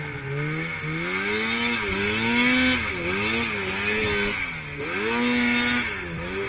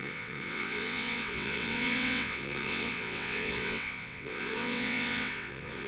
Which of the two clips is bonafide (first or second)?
first